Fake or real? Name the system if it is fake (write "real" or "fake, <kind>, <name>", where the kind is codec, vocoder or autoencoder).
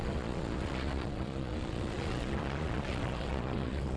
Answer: fake, vocoder, Vocos